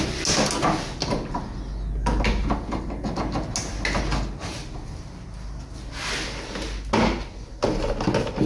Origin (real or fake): real